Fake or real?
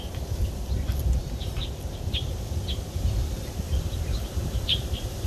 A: fake